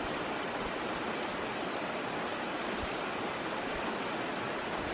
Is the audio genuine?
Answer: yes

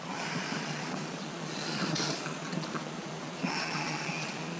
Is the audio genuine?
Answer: no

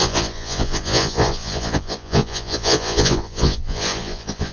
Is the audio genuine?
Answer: no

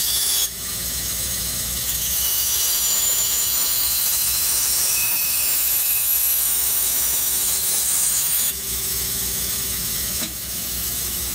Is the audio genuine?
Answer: no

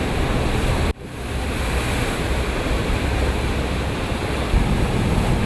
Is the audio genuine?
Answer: yes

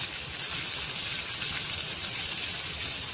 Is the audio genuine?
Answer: yes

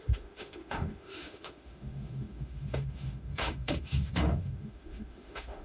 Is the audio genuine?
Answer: no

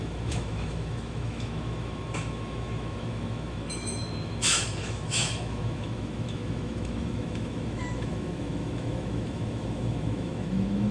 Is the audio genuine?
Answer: no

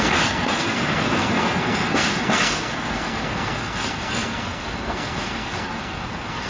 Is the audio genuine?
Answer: no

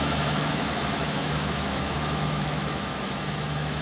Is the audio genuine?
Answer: no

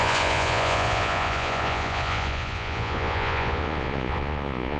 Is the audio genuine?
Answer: no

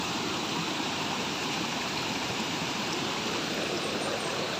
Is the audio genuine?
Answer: no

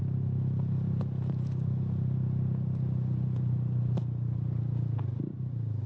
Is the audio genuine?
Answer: yes